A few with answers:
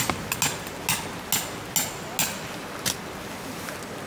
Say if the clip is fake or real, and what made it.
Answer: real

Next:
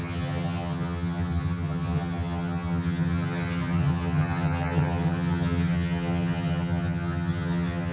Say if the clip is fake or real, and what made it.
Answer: fake, vocoder, HiFi-GAN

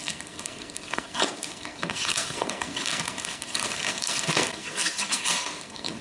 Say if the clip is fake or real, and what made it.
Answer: fake, codec, SNAC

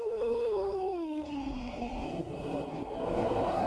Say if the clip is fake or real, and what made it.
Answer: fake, codec, SNAC